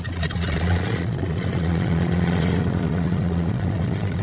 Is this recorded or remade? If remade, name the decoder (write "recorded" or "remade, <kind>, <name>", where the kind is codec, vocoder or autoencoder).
remade, vocoder, Vocos